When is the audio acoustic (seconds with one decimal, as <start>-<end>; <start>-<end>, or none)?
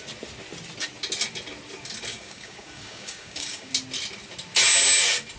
0.0-2.1; 3.7-5.4